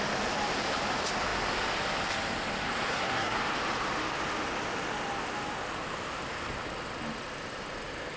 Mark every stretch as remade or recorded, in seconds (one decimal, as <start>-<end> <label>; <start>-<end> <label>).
0.0-2.9 recorded; 2.9-3.4 remade; 3.4-8.2 recorded